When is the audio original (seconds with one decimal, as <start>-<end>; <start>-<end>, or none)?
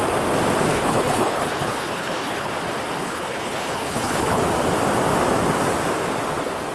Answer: 0.0-0.7; 2.5-3.0; 4.4-6.7